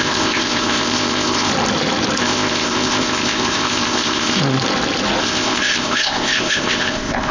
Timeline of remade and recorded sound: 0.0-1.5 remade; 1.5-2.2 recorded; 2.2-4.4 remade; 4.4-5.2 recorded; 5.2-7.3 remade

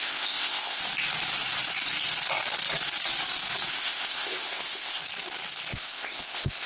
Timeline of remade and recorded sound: 0.0-0.8 remade; 0.8-3.7 recorded; 3.7-5.0 remade; 5.0-5.7 recorded; 5.7-6.7 remade

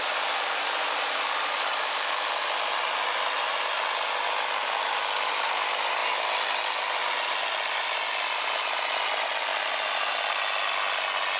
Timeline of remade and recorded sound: 0.0-11.4 recorded

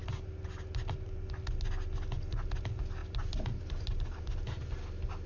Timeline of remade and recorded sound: 0.0-5.3 recorded

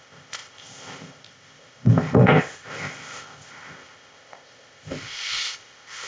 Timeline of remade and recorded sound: 0.0-6.1 remade